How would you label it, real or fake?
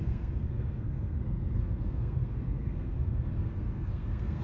fake